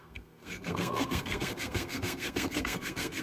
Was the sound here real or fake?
fake